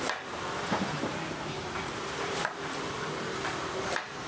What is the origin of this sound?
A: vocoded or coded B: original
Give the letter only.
A